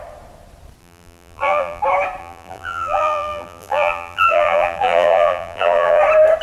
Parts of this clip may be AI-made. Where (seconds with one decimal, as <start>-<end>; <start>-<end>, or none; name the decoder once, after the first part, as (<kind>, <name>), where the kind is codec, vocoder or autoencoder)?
0.8-1.8 (vocoder, BigVGAN v2); 2.2-6.0